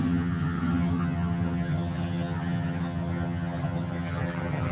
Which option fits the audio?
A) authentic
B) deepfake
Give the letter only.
B